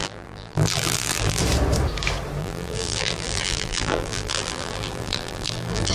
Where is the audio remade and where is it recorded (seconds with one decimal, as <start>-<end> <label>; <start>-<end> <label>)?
0.0-1.4 remade; 1.4-2.4 recorded; 2.4-5.9 remade